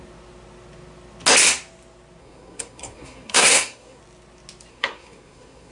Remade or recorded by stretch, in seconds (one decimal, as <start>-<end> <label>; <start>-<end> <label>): 0.0-2.2 recorded; 2.2-4.0 remade; 4.0-4.7 recorded; 4.7-5.7 remade